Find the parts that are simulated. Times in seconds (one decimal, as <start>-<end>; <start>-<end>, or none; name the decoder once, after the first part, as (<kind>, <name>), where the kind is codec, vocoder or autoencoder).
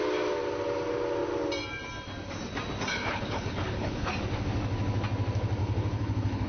2.9-4.1 (codec, HILCodec); 5.6-6.5